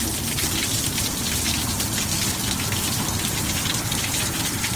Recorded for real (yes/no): yes